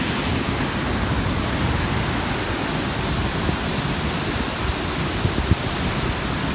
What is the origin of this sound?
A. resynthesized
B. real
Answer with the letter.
B